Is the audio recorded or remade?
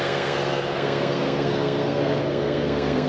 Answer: remade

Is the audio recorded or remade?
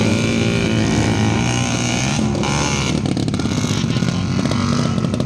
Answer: recorded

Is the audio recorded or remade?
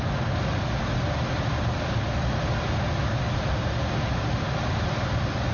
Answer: recorded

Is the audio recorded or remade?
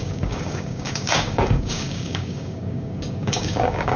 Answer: remade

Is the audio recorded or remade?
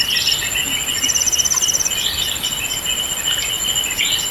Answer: recorded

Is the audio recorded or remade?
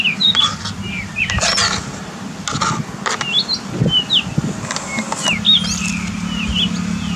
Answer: recorded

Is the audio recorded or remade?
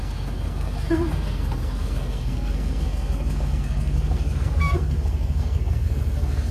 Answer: remade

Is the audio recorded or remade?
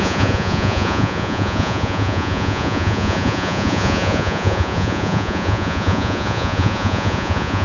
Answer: remade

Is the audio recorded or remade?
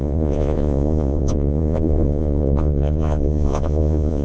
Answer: remade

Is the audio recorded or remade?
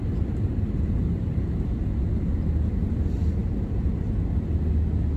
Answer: recorded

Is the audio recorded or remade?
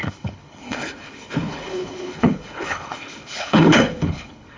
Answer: remade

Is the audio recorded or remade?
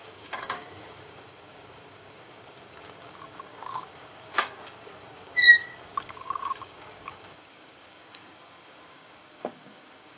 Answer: remade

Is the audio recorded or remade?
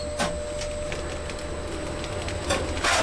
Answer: recorded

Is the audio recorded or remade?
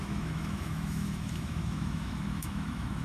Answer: remade